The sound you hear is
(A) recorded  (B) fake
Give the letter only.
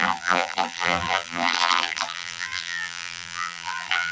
B